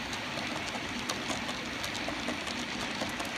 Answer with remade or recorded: recorded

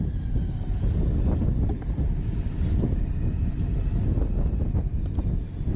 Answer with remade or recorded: recorded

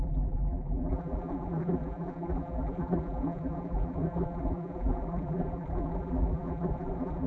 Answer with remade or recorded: remade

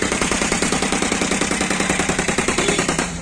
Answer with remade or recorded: remade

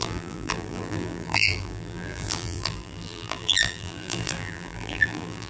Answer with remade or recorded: remade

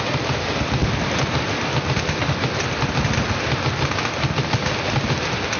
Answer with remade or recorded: recorded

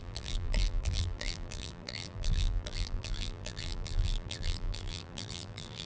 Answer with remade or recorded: remade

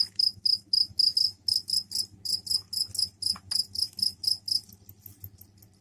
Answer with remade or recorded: recorded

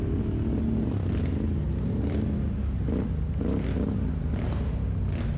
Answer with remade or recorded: recorded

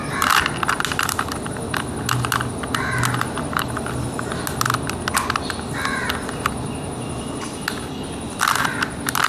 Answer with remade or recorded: recorded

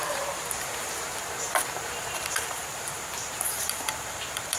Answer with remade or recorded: remade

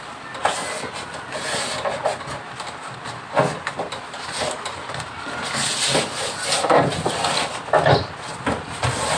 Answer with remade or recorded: recorded